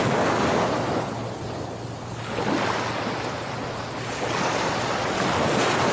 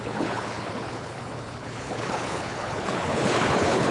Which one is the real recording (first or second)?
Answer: first